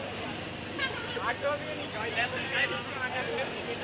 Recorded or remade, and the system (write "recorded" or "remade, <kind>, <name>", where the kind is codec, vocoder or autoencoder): recorded